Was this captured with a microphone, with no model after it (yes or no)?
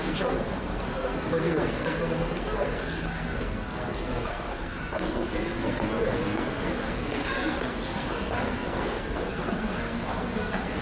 no